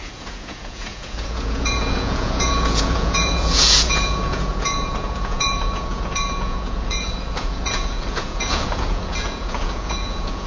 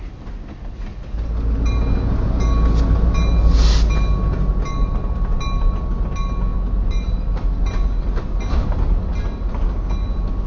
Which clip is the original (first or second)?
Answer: second